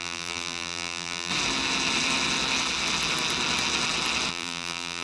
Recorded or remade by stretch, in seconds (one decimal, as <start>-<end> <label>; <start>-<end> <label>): 0.0-1.3 remade; 1.3-4.3 recorded; 4.3-5.0 remade